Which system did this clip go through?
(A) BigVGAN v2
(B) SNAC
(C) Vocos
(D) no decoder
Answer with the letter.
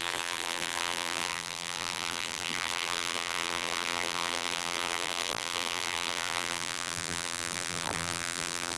A